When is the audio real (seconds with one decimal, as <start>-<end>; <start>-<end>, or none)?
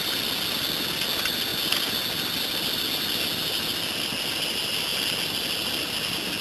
0.0-6.4